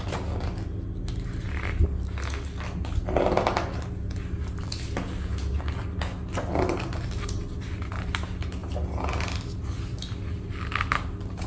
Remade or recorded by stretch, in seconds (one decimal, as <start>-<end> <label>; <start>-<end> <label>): 0.0-11.5 recorded